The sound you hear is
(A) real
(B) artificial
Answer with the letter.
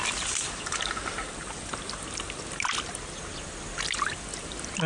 A